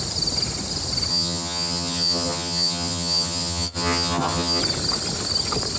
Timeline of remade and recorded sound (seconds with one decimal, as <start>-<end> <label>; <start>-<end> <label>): 0.0-1.1 recorded; 1.1-4.6 remade; 4.6-5.8 recorded